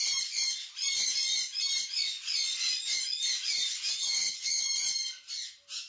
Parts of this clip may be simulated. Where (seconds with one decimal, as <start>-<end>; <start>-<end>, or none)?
4.0-4.6